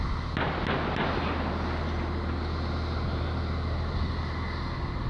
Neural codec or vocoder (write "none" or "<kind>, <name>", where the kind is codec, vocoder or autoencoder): none